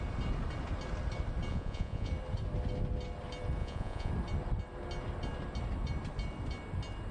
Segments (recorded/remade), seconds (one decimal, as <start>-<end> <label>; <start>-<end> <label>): 0.0-1.5 recorded; 1.5-2.1 remade; 2.1-3.6 recorded; 3.6-4.1 remade; 4.1-7.1 recorded